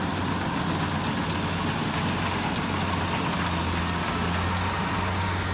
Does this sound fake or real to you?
real